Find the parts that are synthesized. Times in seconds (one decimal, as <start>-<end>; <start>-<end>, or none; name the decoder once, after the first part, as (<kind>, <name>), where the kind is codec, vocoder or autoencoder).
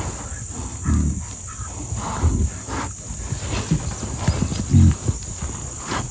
none